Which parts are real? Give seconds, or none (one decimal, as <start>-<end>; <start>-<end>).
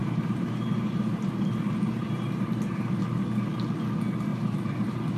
3.0-4.3